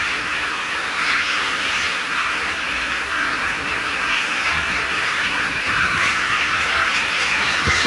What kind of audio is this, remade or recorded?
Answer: remade